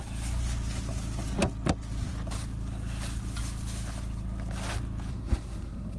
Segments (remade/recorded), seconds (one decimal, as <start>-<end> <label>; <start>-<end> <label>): 0.0-5.1 recorded; 5.1-6.0 remade